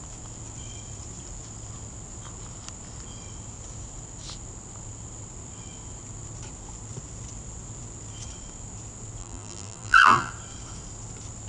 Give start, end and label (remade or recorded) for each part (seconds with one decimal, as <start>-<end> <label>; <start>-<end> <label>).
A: 0.0-9.2 recorded; 9.2-10.3 remade; 10.3-11.5 recorded